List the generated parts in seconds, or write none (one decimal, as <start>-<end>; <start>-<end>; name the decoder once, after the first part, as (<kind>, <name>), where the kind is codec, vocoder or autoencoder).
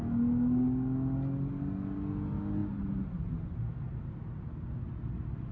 none